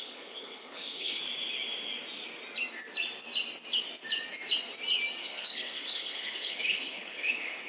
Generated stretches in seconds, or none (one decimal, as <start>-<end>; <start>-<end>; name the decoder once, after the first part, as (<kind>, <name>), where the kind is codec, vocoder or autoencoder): 0.0-1.2 (codec, HILCodec); 5.2-7.7